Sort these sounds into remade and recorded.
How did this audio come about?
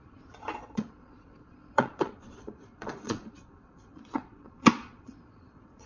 remade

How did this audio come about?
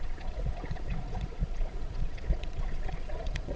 remade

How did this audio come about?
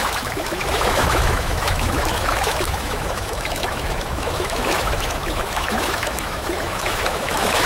remade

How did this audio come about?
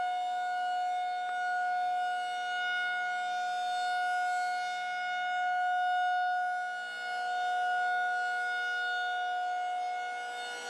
recorded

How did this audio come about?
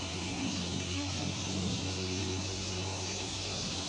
remade